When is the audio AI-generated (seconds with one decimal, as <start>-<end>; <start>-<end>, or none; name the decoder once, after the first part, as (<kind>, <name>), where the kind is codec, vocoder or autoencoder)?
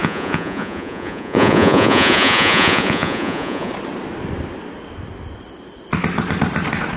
0.0-3.7 (vocoder, Vocos)